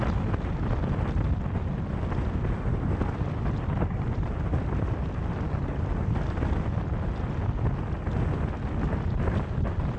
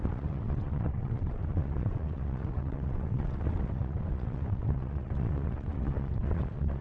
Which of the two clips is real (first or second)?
first